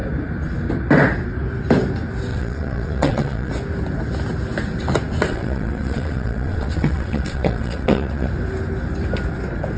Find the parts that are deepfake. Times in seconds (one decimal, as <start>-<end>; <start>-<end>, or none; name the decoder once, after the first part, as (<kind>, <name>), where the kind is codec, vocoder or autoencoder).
2.3-3.5 (vocoder, WaveNeXt); 5.3-8.3